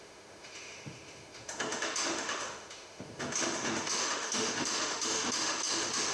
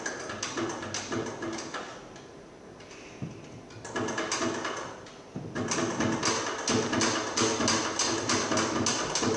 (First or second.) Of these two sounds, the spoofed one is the first